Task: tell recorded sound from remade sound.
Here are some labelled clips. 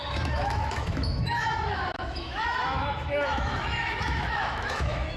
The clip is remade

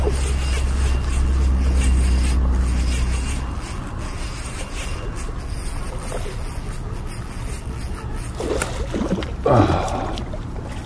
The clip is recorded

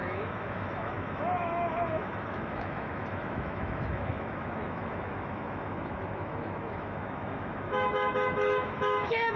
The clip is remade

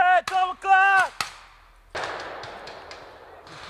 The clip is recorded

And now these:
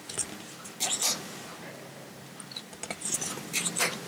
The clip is recorded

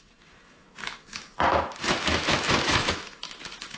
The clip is remade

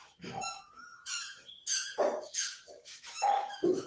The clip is remade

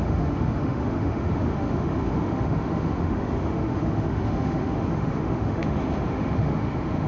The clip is remade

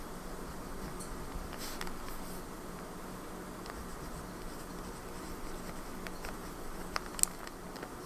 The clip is recorded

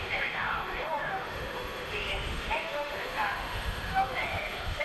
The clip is remade